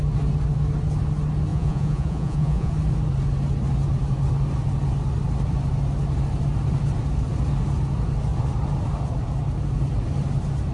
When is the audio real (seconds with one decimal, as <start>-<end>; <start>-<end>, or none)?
0.0-1.5; 2.7-10.7